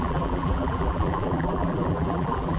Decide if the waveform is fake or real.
fake